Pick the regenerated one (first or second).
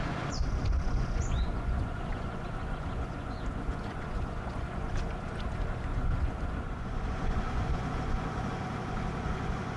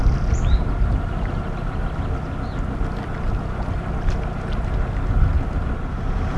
first